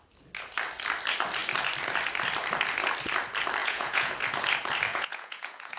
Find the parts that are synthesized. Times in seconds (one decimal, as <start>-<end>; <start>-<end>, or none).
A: 3.6-4.1; 4.9-5.8